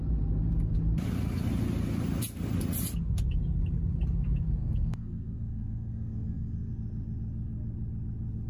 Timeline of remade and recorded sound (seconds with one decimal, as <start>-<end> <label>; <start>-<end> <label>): 0.0-4.6 recorded; 4.6-6.7 remade; 6.7-8.5 recorded